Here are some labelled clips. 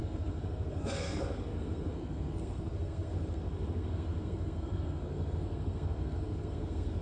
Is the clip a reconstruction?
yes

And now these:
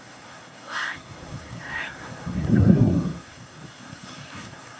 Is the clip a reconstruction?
yes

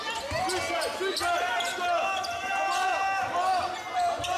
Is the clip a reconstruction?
no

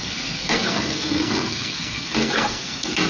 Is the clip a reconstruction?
yes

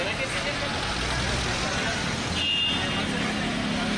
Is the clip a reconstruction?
no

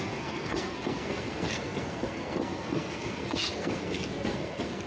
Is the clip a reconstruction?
yes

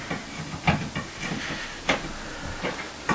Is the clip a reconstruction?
no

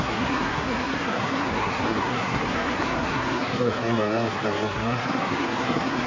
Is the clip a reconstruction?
yes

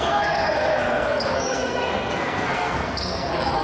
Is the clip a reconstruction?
yes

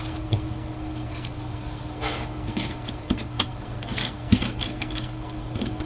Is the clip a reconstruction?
yes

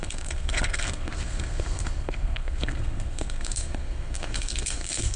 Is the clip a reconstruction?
yes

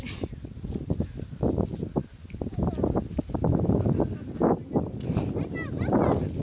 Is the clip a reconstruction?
no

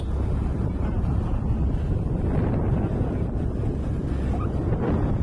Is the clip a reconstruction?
no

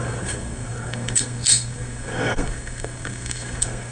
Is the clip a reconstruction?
yes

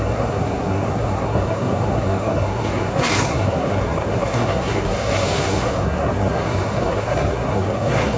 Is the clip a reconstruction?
yes